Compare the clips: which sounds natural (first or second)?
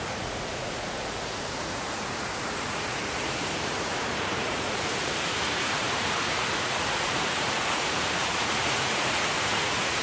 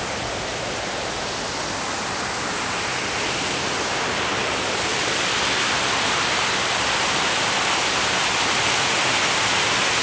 second